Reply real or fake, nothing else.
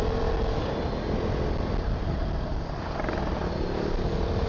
real